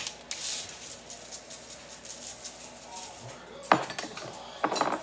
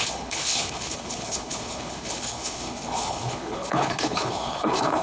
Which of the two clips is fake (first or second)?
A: second